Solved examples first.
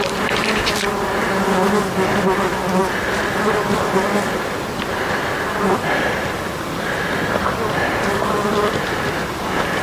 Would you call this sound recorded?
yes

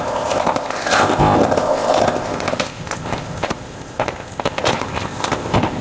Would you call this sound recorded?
no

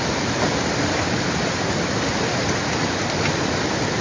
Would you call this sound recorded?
yes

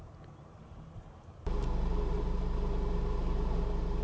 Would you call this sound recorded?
no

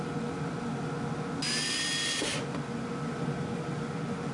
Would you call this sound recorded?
yes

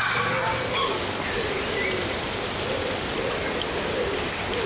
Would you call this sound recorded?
yes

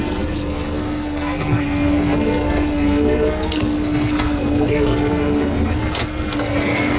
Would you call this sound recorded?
no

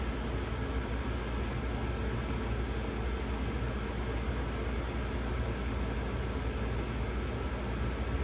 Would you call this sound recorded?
yes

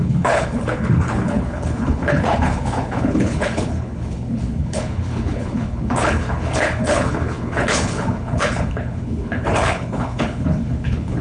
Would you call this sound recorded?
no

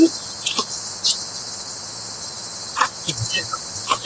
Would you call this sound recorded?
yes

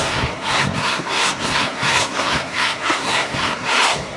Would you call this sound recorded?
no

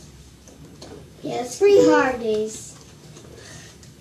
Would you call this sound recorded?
no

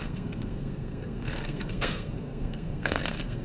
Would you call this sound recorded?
no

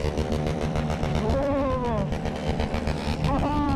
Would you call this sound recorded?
no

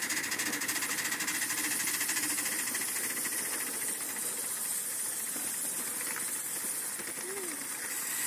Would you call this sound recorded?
yes